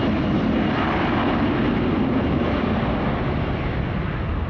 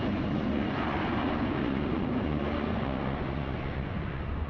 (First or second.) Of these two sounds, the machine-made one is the second